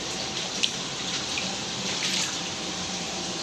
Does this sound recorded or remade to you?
remade